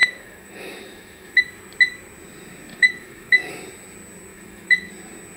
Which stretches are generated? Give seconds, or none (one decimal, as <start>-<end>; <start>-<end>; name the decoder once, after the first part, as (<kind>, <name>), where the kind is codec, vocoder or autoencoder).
0.0-1.4 (autoencoder, DAC-VAE); 2.7-3.5; 4.3-4.9